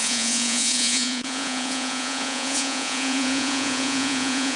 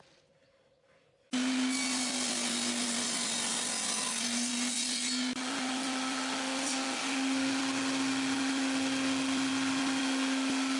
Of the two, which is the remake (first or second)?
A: first